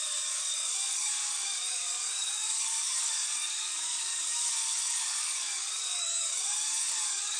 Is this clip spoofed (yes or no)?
yes